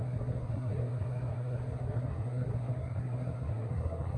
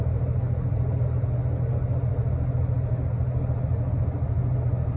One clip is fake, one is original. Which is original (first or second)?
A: second